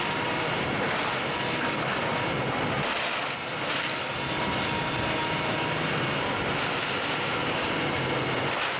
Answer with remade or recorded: recorded